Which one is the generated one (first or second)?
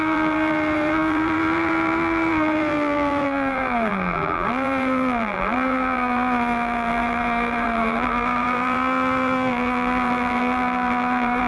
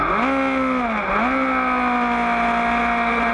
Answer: first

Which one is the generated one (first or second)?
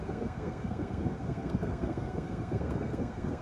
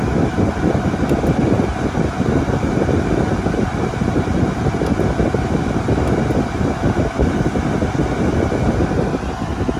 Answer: first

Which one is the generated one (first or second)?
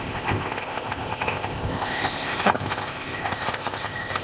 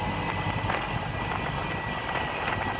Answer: first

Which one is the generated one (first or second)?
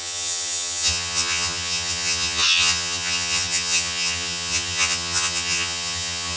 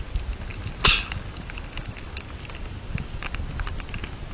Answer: first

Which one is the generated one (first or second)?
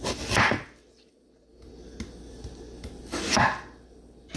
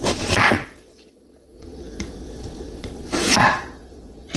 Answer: second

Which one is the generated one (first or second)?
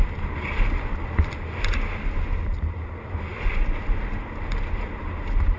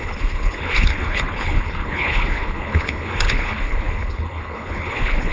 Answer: second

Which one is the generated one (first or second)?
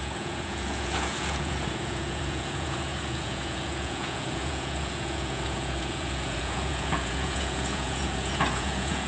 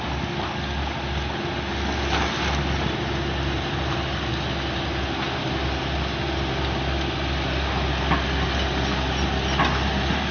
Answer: first